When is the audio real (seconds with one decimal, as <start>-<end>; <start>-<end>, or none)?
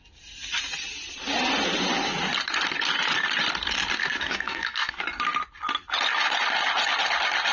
0.0-4.0; 5.0-7.5